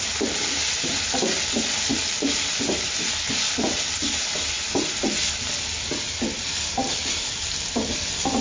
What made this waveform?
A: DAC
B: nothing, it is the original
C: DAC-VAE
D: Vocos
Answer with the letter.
B